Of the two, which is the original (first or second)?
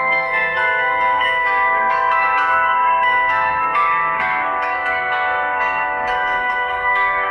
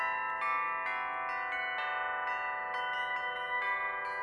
second